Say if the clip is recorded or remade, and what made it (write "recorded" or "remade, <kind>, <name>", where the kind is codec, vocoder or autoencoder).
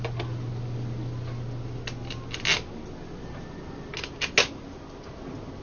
recorded